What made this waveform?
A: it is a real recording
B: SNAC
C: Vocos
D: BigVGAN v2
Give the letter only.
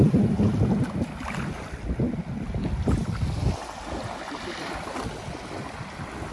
A